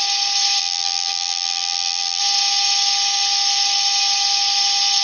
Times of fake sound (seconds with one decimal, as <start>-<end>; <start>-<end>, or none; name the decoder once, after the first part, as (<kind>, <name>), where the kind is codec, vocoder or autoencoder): 0.6-2.2 (vocoder, BigVGAN v2)